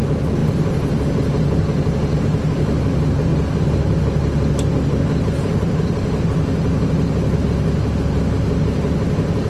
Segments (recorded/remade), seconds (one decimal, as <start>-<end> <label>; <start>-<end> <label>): 0.0-9.5 recorded